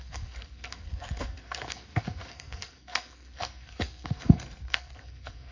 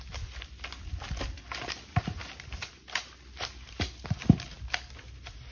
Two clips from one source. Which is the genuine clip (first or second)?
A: second